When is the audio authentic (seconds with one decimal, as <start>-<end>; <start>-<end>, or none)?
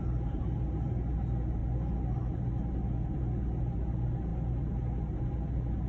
0.0-5.9